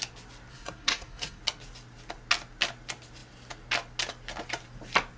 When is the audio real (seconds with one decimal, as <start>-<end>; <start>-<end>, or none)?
0.0-0.5; 1.4-5.2